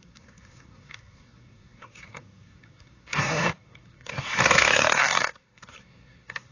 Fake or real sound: fake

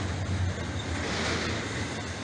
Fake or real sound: real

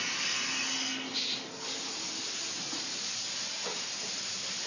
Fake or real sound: real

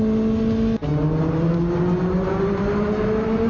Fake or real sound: real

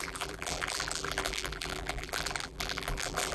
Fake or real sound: fake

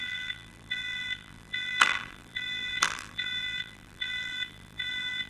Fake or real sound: fake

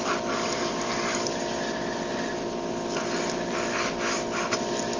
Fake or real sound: real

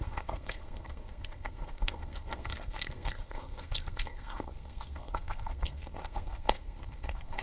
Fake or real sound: fake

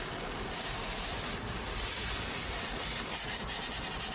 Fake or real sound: real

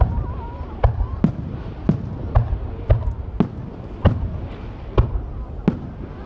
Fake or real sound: real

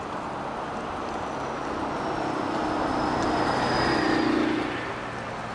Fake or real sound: real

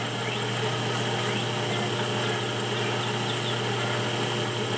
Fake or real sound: real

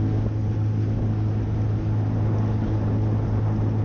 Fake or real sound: real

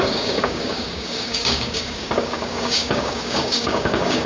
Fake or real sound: fake